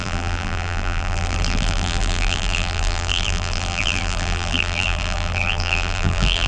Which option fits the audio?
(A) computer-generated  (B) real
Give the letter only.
A